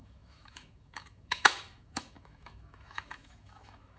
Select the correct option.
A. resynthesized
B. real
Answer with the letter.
A